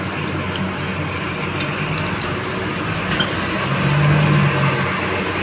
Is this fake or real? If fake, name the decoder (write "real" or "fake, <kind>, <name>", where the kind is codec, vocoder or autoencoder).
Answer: real